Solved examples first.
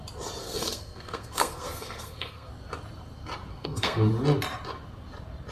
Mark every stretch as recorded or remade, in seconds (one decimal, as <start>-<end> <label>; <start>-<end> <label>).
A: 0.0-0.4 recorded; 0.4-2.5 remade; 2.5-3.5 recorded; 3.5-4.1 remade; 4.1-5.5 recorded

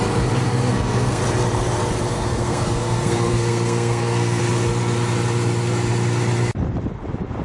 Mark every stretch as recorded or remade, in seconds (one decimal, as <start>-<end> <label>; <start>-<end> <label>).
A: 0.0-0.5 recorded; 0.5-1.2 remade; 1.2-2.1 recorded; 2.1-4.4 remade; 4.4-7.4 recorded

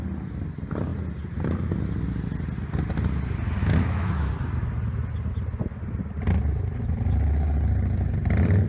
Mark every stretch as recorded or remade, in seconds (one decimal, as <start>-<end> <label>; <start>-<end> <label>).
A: 0.0-3.6 recorded; 3.6-4.3 remade; 4.3-8.7 recorded

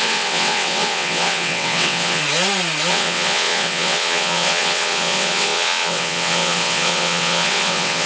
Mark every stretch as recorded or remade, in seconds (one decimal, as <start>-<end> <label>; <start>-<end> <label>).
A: 0.0-2.2 remade; 2.2-2.9 recorded; 2.9-8.1 remade

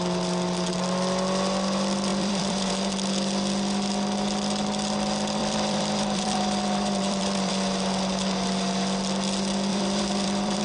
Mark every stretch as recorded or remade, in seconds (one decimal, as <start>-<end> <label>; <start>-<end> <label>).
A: 0.0-2.1 recorded; 2.1-2.7 remade; 2.7-5.4 recorded; 5.4-7.5 remade; 7.5-9.7 recorded; 9.7-10.6 remade

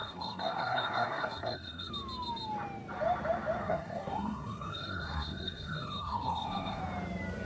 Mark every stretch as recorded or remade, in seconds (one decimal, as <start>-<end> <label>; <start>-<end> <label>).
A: 0.0-1.9 remade; 1.9-3.6 recorded; 3.6-6.8 remade; 6.8-7.5 recorded

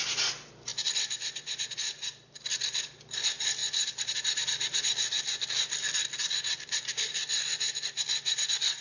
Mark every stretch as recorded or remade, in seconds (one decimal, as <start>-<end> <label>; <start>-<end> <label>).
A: 0.0-8.8 recorded

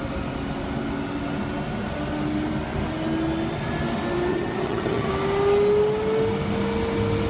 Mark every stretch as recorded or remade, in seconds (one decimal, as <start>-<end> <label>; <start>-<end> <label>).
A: 0.0-4.3 recorded; 4.3-5.1 remade; 5.1-7.3 recorded